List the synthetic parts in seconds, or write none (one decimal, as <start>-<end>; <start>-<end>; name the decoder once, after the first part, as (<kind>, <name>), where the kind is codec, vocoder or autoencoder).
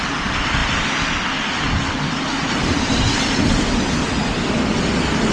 0.6-3.8 (vocoder, BigVGAN v2)